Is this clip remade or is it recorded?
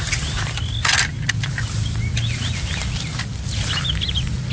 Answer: recorded